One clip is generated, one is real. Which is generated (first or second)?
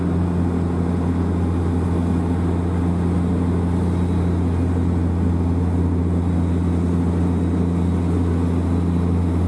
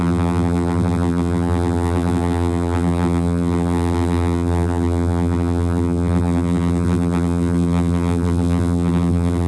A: second